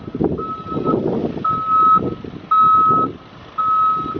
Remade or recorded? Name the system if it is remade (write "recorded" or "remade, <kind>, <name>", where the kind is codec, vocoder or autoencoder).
recorded